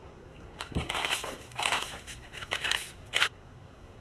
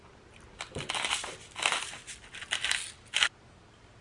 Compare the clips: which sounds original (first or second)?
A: second